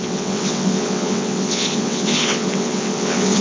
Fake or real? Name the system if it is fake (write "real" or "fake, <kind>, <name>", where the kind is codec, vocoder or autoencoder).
fake, vocoder, WaveNeXt